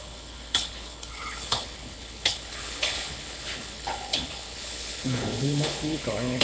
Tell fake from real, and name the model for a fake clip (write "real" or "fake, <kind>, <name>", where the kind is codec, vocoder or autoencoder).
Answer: fake, codec, HILCodec